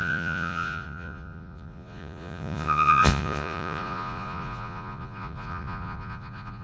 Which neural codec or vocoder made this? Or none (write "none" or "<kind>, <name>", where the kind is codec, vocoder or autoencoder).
vocoder, Vocos